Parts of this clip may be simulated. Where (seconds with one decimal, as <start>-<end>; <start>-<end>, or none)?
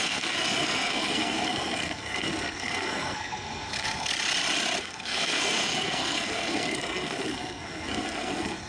0.0-4.1; 4.8-8.7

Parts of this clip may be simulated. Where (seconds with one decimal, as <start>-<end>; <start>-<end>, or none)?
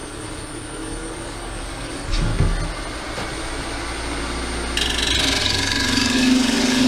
0.0-2.3; 5.4-6.9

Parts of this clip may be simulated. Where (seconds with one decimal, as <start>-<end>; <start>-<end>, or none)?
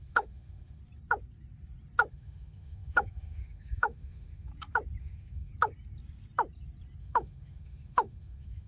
0.0-0.8; 2.1-4.5; 5.0-5.5; 7.0-8.7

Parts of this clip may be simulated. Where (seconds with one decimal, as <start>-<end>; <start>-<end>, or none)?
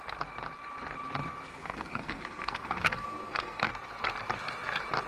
1.5-3.7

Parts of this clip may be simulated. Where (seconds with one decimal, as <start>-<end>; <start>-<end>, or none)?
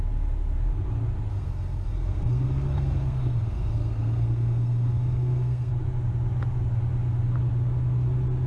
1.3-5.7